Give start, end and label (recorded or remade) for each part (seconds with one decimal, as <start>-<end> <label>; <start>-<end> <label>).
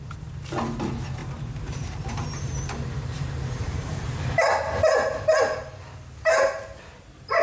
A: 0.0-1.2 recorded; 1.2-4.2 remade; 4.2-7.4 recorded